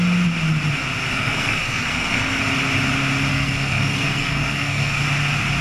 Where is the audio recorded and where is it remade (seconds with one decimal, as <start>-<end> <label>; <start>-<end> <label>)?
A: 0.0-1.1 recorded; 1.1-2.4 remade; 2.4-3.3 recorded; 3.3-5.0 remade; 5.0-5.6 recorded